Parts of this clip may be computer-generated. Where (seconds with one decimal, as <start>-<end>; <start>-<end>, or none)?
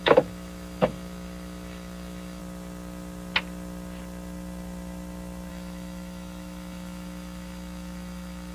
0.0-2.4; 5.5-8.5